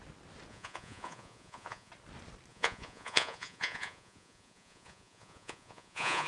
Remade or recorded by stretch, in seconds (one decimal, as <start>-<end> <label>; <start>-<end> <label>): 0.0-0.5 recorded; 0.5-1.9 remade; 1.9-2.5 recorded; 2.5-6.3 remade

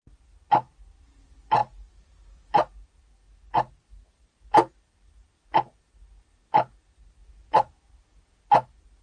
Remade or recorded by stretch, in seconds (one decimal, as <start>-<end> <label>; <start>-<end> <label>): 0.0-7.2 recorded; 7.2-8.4 remade; 8.4-9.0 recorded

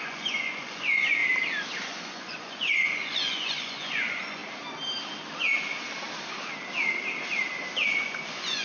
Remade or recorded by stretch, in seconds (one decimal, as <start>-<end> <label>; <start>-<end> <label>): 0.0-1.2 remade; 1.2-1.8 recorded; 1.8-4.4 remade; 4.4-8.0 recorded; 8.0-8.6 remade

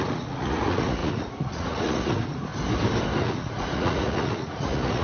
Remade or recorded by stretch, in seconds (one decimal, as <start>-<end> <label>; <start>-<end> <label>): 0.0-2.5 remade; 2.5-3.2 recorded; 3.2-5.0 remade

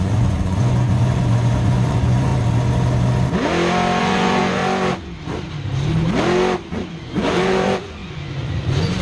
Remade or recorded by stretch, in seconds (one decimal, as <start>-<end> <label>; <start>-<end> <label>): 0.0-2.3 remade; 2.3-4.0 recorded; 4.0-4.6 remade; 4.6-6.7 recorded; 6.7-9.0 remade

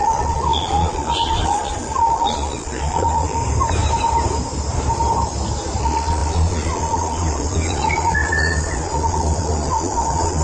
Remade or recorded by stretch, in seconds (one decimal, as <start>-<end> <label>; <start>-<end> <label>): 0.0-3.4 remade; 3.4-5.8 recorded; 5.8-10.4 remade

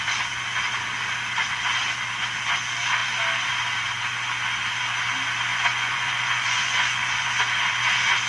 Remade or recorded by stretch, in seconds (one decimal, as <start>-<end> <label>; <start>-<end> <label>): 0.0-5.5 recorded; 5.5-7.3 remade; 7.3-8.3 recorded

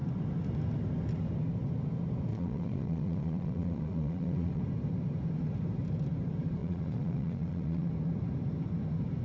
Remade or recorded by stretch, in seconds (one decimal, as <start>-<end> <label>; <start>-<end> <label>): 0.0-2.3 recorded; 2.3-4.6 remade; 4.6-6.6 recorded; 6.6-7.9 remade; 7.9-9.2 recorded